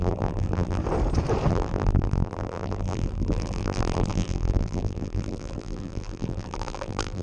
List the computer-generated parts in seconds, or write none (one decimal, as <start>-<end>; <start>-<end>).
0.0-0.8; 1.5-7.2